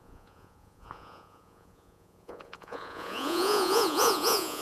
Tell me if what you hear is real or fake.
fake